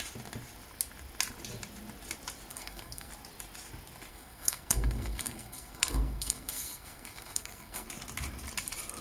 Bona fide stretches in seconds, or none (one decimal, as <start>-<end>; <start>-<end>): 0.0-2.5; 3.1-4.1; 7.9-9.0